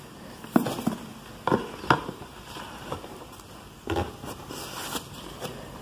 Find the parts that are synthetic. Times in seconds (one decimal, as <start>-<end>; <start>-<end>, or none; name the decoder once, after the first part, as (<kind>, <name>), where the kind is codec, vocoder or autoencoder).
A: none